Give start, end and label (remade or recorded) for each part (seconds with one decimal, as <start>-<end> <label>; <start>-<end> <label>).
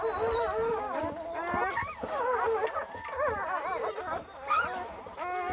0.0-5.5 recorded